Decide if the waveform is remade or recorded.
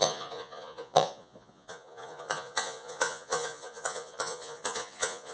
remade